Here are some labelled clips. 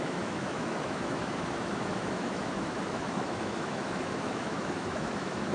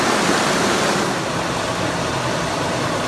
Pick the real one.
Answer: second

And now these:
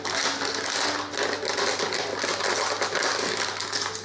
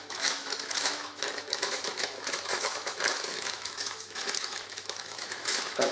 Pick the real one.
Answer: first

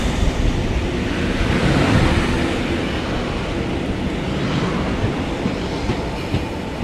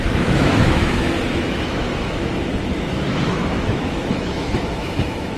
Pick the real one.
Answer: first